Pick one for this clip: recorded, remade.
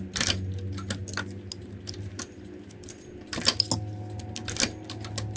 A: recorded